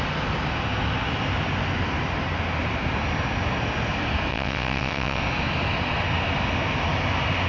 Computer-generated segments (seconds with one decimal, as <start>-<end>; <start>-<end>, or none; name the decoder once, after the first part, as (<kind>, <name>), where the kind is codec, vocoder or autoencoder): 4.3-5.2 (vocoder, WaveNeXt)